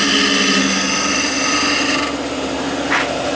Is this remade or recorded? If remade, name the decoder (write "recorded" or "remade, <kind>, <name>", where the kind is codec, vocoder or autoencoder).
recorded